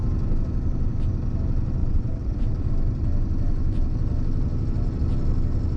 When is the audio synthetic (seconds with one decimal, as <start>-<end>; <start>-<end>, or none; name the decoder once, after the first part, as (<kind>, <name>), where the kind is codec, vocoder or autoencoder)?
1.8-2.7 (vocoder, WaveNeXt)